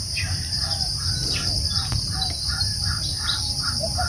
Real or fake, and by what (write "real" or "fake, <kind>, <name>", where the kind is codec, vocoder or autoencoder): fake, vocoder, BigVGAN v2